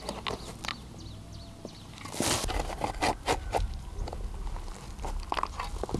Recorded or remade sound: recorded